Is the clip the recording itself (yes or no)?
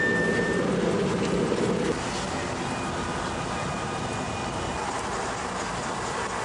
yes